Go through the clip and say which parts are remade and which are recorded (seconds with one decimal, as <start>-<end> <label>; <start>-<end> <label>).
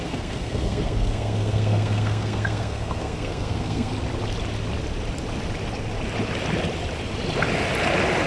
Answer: 0.0-3.9 remade; 3.9-8.3 recorded